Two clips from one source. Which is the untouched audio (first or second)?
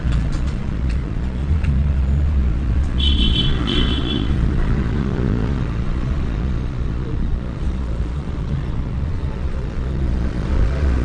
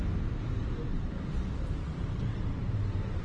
second